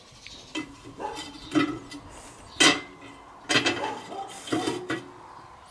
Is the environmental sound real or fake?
real